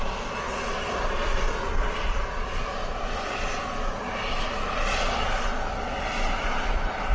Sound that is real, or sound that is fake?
real